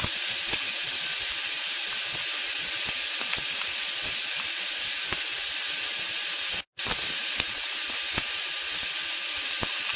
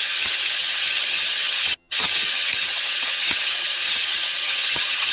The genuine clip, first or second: first